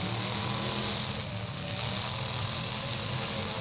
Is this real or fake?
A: real